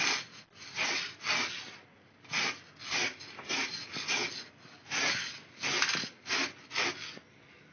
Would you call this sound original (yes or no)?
yes